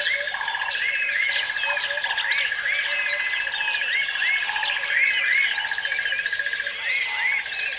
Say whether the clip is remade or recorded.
recorded